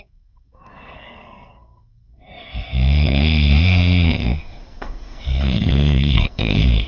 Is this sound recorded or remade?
remade